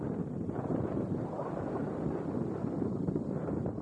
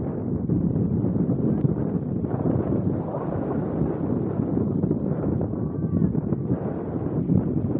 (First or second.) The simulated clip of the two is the second